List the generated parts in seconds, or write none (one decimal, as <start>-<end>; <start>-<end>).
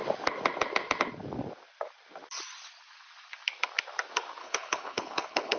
4.4-5.6